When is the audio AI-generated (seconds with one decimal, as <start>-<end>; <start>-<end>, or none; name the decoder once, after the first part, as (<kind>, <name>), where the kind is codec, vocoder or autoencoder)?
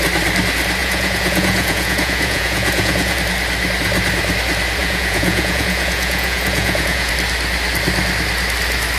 0.8-3.2 (vocoder, Vocos); 4.8-7.1